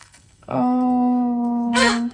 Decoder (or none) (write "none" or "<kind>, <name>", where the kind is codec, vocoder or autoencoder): codec, SNAC